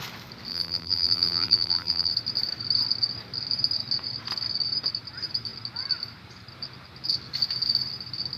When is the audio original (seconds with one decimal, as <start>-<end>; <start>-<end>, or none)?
0.0-0.5; 2.1-8.4

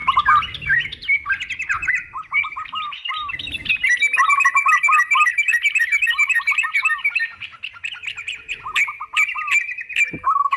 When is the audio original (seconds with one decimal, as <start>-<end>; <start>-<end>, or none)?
0.0-10.6

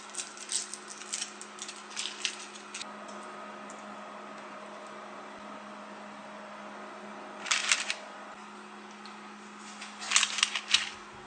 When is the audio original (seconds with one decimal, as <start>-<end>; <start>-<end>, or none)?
0.0-11.3